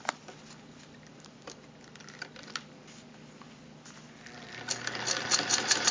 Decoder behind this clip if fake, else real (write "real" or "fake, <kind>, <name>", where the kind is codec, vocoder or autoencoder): real